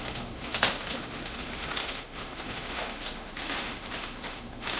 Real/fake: fake